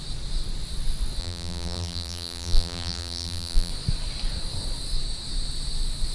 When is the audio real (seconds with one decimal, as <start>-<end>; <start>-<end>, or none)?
0.0-1.2; 3.7-6.1